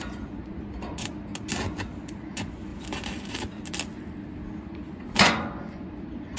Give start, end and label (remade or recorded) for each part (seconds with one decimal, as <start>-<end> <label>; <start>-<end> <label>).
0.0-1.1 remade; 1.1-2.3 recorded; 2.3-2.7 remade; 2.7-4.6 recorded; 4.6-6.4 remade